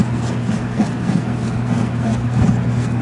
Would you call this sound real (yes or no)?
no